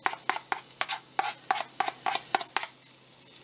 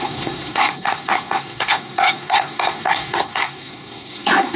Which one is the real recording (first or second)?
first